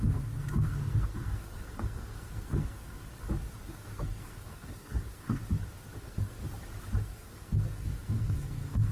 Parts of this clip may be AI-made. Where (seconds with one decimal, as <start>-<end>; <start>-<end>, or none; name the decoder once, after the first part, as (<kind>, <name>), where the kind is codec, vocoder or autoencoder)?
0.0-3.0 (codec, SNAC); 3.7-5.4; 6.0-6.4; 7.0-8.9